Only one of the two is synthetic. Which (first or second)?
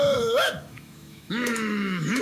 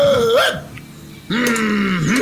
first